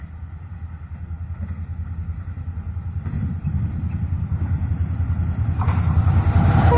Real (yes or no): yes